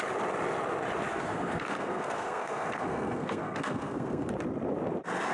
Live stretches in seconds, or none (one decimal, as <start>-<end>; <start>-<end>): 0.0-1.1; 4.3-5.3